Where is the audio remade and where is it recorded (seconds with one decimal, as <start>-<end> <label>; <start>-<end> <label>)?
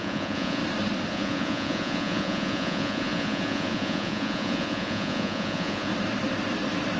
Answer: 0.0-0.6 remade; 0.6-1.1 recorded; 1.1-5.9 remade; 5.9-7.0 recorded